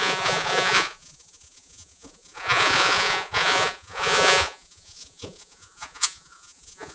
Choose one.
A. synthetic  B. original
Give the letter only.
A